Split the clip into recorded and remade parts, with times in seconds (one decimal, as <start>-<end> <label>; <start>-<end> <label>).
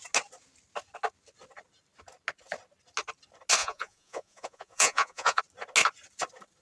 0.0-3.6 recorded; 3.6-5.4 remade; 5.4-6.6 recorded